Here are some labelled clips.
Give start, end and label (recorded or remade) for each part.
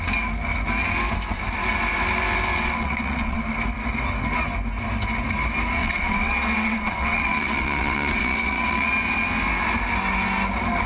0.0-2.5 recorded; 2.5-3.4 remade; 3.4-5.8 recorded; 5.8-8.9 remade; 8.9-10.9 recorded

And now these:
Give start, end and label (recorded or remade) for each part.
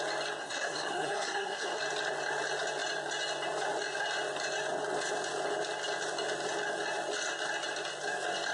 0.0-0.4 recorded; 0.4-1.8 remade; 1.8-8.5 recorded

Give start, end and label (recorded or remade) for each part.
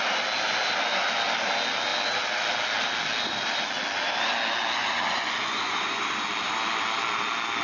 0.0-4.8 recorded; 4.8-6.0 remade; 6.0-7.6 recorded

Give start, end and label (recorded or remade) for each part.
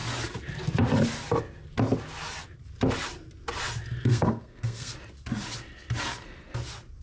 0.0-4.1 recorded; 4.1-4.9 remade; 4.9-7.0 recorded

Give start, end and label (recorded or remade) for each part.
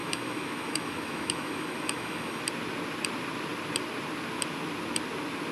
0.0-2.4 remade; 2.4-5.5 recorded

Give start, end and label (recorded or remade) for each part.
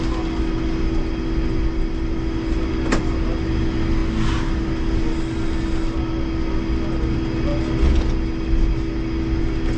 0.0-9.8 recorded